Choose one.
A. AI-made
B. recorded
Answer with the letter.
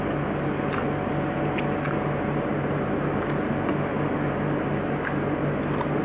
B